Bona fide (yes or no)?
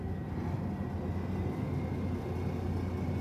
yes